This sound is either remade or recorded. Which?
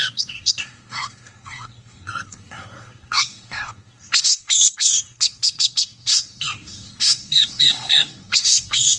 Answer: remade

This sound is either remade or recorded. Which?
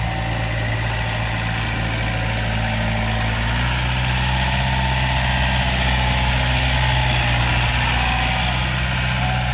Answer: recorded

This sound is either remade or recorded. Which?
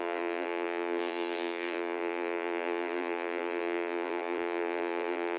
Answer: remade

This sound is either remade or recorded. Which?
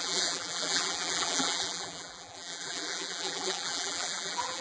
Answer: remade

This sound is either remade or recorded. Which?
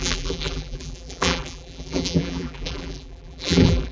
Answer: remade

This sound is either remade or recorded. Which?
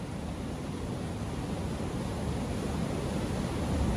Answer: recorded